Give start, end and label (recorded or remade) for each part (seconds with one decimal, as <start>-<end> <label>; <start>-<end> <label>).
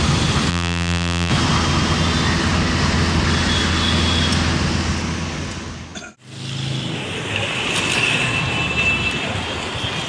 0.0-0.5 recorded; 0.5-1.3 remade; 1.3-10.1 recorded